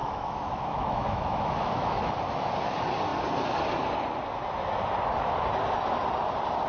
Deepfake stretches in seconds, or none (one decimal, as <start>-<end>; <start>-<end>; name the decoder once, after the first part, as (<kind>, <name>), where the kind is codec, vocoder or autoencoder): 0.0-2.1 (autoencoder, DAC-VAE)